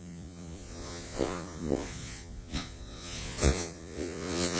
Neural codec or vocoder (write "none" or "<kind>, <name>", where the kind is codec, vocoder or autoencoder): vocoder, Vocos